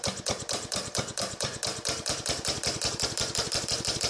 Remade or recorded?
recorded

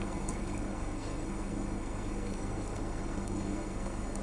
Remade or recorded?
remade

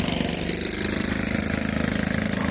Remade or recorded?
recorded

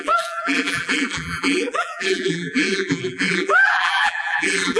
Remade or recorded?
remade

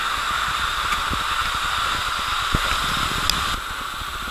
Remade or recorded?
recorded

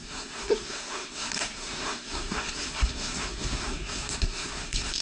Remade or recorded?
remade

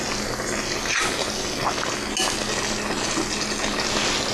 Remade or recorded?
recorded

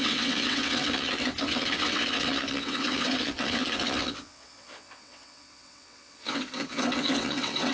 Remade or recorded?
remade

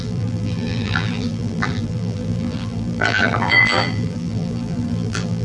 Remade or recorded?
remade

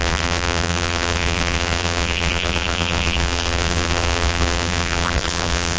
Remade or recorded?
remade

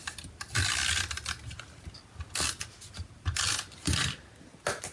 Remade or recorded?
recorded